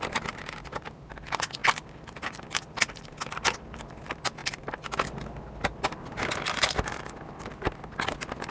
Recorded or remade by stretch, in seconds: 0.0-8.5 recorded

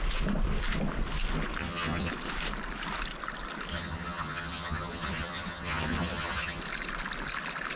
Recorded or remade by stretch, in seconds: 0.0-1.6 recorded; 1.6-2.1 remade; 2.1-3.7 recorded; 3.7-6.6 remade; 6.6-7.8 recorded

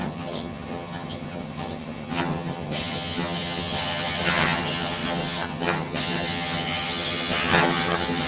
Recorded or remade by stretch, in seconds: 0.0-8.3 remade

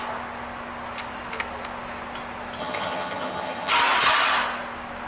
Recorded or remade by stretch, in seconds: 0.0-2.6 recorded; 2.6-3.7 remade; 3.7-5.1 recorded